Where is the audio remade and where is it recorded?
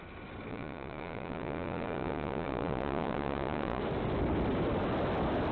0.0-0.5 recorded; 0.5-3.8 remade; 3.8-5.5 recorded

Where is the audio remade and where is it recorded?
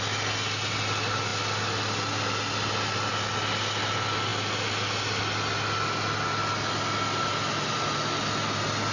0.0-8.9 recorded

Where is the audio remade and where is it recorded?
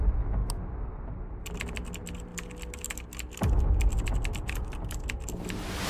0.0-5.9 recorded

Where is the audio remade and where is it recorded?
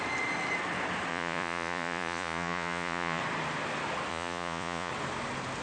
0.0-1.1 recorded; 1.1-3.2 remade; 3.2-4.1 recorded; 4.1-4.9 remade; 4.9-5.6 recorded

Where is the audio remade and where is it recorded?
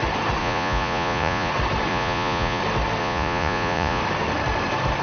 0.0-0.4 recorded; 0.4-1.5 remade; 1.5-1.9 recorded; 1.9-2.6 remade; 2.6-3.0 recorded; 3.0-4.0 remade; 4.0-5.0 recorded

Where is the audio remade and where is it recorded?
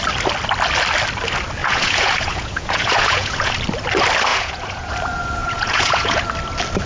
0.0-1.6 recorded; 1.6-3.5 remade; 3.5-4.3 recorded; 4.3-4.9 remade; 4.9-5.4 recorded; 5.4-6.2 remade; 6.2-6.9 recorded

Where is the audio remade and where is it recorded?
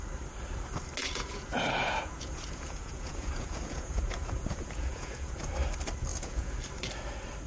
0.0-1.0 recorded; 1.0-5.5 remade; 5.5-6.1 recorded; 6.1-6.6 remade; 6.6-7.5 recorded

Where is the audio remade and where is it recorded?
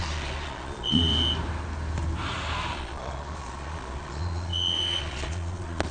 0.0-1.1 remade; 1.1-2.7 recorded; 2.7-5.9 remade